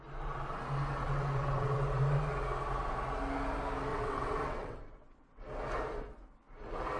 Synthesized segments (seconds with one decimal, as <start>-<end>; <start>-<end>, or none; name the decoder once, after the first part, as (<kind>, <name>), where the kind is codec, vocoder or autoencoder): 1.0-1.8 (vocoder, WaveNeXt); 3.9-5.4